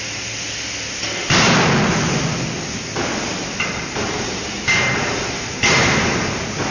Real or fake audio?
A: real